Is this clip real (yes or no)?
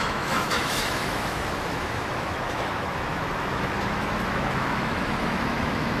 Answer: no